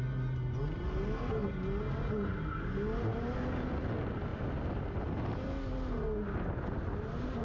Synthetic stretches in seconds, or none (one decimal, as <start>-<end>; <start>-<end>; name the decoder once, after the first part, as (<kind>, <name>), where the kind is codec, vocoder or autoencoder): none